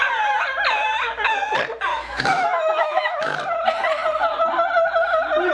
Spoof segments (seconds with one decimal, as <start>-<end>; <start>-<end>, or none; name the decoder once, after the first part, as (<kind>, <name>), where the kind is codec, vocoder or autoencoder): 1.9-3.4 (autoencoder, DAC-VAE)